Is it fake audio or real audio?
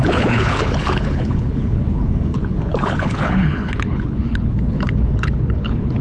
fake